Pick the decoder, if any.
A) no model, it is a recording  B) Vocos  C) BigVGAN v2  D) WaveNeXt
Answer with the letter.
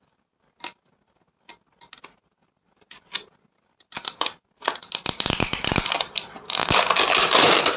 A